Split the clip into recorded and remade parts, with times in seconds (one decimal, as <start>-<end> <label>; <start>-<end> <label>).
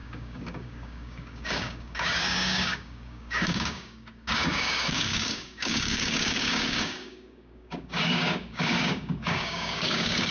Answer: 0.0-10.3 remade